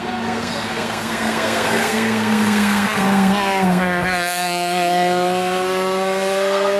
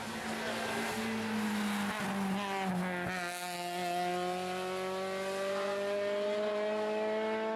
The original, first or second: second